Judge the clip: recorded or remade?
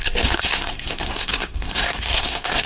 remade